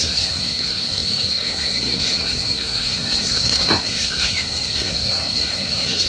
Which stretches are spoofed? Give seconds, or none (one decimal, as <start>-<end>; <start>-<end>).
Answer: 0.0-6.1